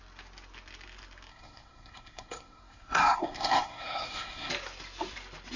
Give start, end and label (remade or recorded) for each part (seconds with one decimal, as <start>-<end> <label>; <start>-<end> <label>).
0.0-1.3 recorded; 1.3-4.5 remade; 4.5-5.6 recorded